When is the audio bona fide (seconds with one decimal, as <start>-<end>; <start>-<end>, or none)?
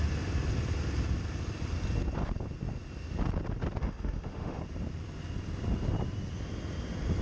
0.0-3.8; 4.6-7.2